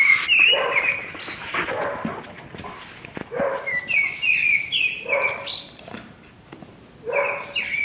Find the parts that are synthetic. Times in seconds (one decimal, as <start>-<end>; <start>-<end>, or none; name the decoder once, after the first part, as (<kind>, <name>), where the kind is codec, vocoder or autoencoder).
3.2-3.8 (autoencoder, DAC-VAE)